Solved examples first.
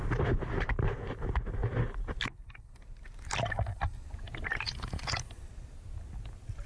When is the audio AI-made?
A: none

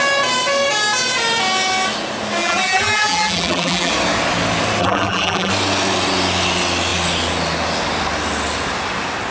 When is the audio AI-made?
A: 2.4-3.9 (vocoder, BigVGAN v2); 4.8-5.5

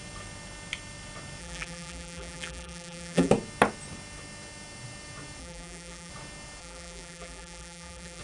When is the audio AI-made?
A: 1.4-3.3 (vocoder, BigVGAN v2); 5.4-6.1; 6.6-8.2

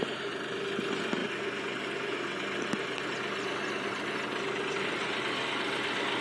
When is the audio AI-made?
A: none

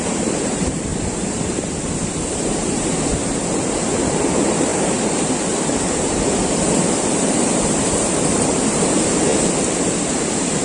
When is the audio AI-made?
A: 0.0-0.9 (vocoder, BigVGAN v2); 2.4-9.3; 10.0-10.6

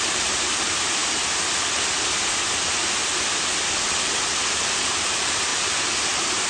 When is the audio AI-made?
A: 0.0-1.0 (vocoder, BigVGAN v2); 2.2-3.1; 5.0-6.5

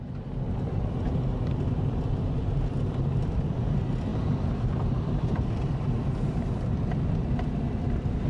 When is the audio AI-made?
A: 0.0-8.3 (vocoder, BigVGAN v2)